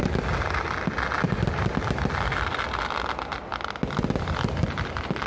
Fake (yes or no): no